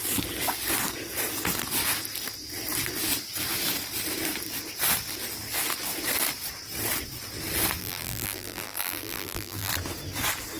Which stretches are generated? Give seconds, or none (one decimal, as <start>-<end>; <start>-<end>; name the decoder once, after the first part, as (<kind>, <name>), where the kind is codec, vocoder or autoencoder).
7.8-9.7 (vocoder, BigVGAN v2)